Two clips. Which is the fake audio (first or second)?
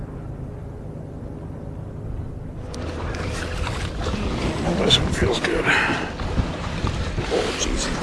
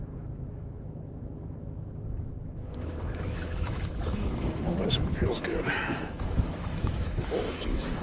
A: second